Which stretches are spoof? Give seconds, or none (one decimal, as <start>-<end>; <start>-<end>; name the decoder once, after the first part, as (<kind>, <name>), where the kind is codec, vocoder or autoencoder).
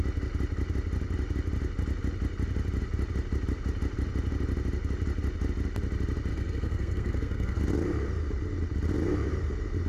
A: 6.3-7.6 (codec, SNAC)